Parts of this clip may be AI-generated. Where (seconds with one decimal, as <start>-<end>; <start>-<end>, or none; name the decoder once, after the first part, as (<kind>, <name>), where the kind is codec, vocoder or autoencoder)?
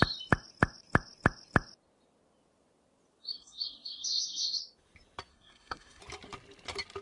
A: 3.2-4.6 (codec, SNAC); 5.3-6.0